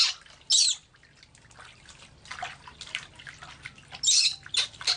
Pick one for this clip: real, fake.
real